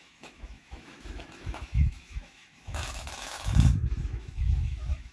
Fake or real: fake